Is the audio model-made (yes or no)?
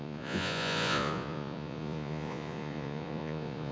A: yes